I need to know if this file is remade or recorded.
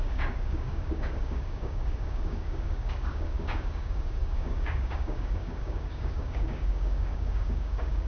remade